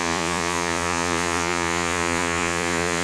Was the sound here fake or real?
fake